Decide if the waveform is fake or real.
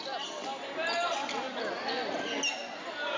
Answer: real